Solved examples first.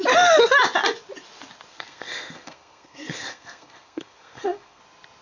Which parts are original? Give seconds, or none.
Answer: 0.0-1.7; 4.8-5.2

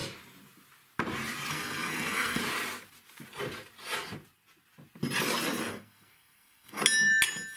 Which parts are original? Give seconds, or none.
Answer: 0.0-1.5; 2.4-5.7; 6.8-7.6

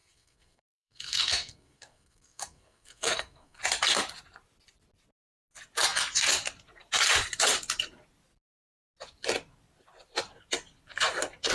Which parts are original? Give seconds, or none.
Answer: 3.6-11.5

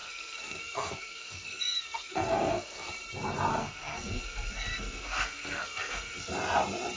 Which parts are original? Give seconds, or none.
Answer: 2.9-3.5; 6.3-7.0

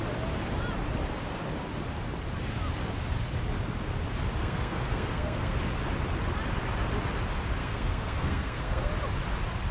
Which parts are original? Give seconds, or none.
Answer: 0.0-4.4; 5.6-7.6; 8.9-9.7

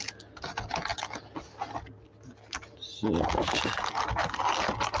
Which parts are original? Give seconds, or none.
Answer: 0.0-5.0

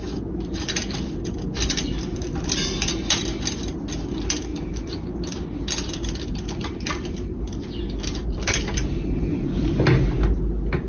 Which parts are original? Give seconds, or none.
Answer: 0.0-10.9

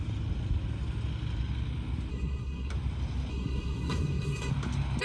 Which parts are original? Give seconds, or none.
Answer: 0.0-2.1; 2.7-3.3; 4.5-5.0